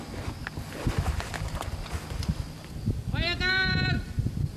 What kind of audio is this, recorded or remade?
recorded